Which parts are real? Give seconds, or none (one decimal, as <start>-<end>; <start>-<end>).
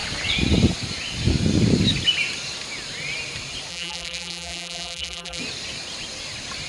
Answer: 0.0-3.7; 5.4-6.7